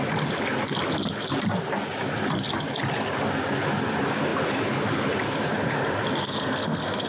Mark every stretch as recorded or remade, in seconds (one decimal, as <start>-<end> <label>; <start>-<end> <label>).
0.0-6.2 recorded; 6.2-7.1 remade